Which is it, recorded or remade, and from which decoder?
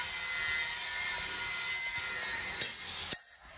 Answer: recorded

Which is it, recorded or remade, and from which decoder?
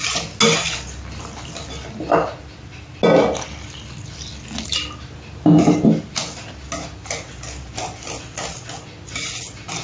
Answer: recorded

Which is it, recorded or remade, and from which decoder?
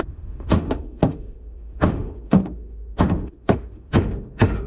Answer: remade, autoencoder, DAC-VAE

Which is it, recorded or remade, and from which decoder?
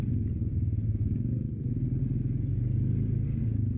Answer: recorded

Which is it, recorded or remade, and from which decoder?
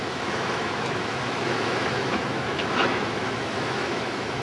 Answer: remade, autoencoder, DAC-VAE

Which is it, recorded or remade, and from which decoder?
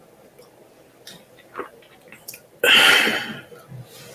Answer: recorded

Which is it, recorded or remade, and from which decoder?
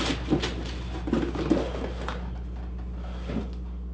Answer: recorded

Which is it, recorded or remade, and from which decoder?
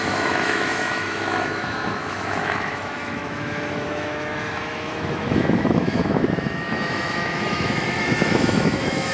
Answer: remade, autoencoder, DAC-VAE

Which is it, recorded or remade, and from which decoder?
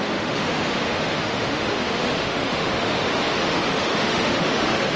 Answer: remade, autoencoder, DAC-VAE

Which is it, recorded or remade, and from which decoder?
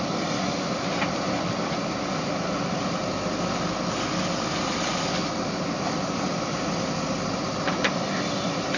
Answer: recorded